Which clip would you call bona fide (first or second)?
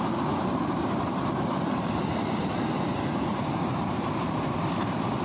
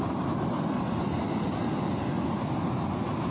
second